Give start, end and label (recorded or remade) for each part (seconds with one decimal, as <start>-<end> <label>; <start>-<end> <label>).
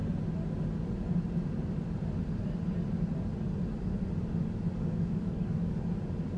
0.0-4.7 recorded; 4.7-5.9 remade; 5.9-6.4 recorded